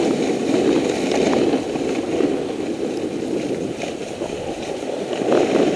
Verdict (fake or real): real